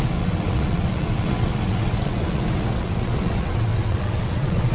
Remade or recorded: remade